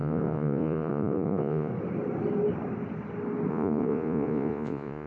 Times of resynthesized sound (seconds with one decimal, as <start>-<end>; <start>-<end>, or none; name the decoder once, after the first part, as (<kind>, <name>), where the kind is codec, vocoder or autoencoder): 0.0-1.7 (vocoder, Vocos); 3.5-5.1